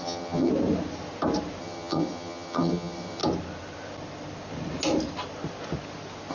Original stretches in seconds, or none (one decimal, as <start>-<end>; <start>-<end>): 0.5-1.6; 3.2-6.3